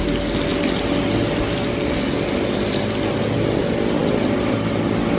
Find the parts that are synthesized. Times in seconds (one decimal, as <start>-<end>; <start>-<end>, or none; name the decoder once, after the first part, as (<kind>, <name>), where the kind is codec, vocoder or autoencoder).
none